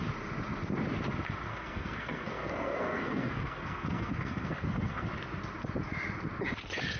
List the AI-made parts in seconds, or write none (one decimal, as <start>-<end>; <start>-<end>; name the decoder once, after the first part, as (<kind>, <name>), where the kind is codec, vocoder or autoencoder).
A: 1.5-5.1 (codec, SNAC)